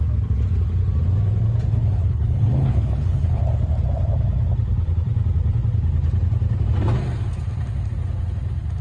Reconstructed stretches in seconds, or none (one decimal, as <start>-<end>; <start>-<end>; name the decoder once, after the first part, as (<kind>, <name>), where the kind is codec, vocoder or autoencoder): 1.7-3.4 (codec, HILCodec)